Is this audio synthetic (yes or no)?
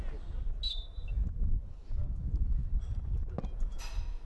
no